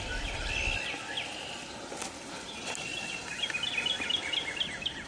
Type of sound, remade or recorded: recorded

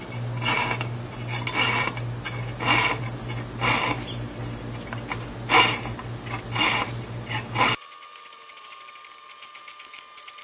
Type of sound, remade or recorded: recorded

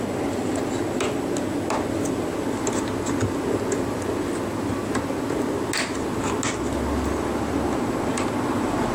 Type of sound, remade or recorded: recorded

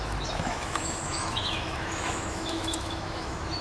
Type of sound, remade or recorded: remade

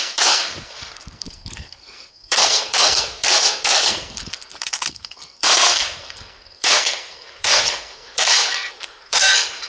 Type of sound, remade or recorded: remade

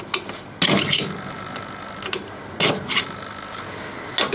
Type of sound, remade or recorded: recorded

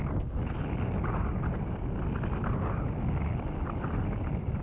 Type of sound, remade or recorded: recorded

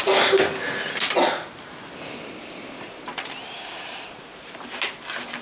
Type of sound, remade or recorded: recorded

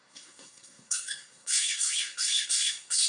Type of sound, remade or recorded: remade